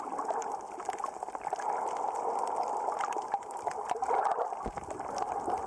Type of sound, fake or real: real